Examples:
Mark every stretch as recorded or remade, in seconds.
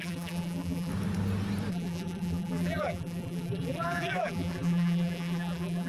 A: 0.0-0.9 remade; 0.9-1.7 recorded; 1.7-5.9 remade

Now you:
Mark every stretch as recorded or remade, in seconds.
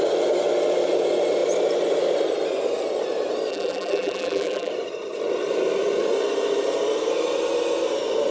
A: 0.0-3.5 recorded; 3.5-4.7 remade; 4.7-8.3 recorded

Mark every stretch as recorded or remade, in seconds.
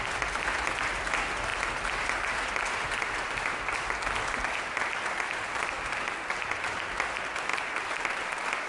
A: 0.0-8.7 recorded